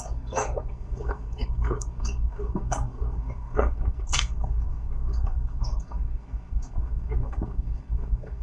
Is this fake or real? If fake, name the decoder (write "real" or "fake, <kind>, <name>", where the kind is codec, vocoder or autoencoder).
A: fake, codec, SNAC